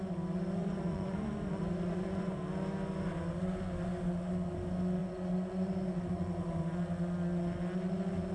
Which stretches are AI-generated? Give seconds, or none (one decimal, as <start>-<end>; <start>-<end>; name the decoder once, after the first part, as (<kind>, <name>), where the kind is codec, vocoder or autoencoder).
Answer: 0.6-2.4 (vocoder, Vocos); 5.0-6.6